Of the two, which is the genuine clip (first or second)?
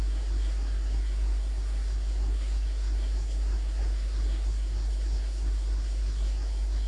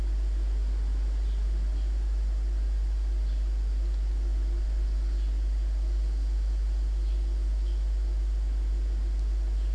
second